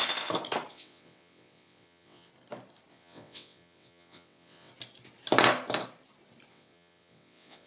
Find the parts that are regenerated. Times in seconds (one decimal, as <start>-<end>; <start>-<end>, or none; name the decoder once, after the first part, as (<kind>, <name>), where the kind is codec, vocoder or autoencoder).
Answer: 0.7-2.3 (vocoder, WaveNeXt); 2.9-4.7; 6.5-7.7